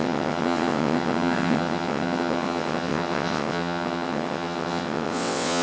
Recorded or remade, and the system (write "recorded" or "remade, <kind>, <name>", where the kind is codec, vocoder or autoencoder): remade, vocoder, WaveNeXt